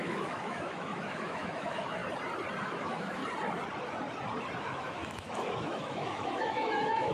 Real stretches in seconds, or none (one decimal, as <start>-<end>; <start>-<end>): 2.0-2.6; 3.2-4.6